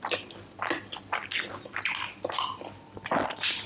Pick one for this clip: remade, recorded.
recorded